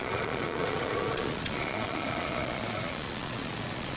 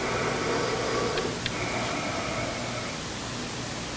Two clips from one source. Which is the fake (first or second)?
first